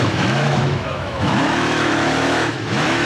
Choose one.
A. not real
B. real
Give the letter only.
A